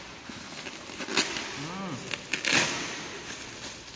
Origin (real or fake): real